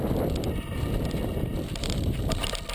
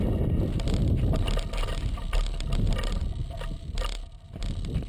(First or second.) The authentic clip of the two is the second